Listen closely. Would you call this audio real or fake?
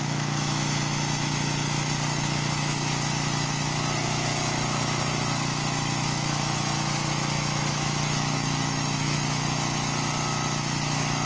fake